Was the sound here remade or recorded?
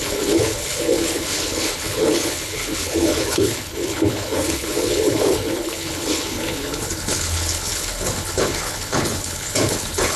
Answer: remade